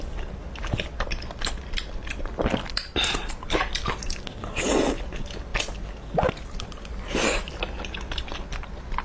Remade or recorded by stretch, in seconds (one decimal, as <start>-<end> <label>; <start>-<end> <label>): 0.0-9.0 recorded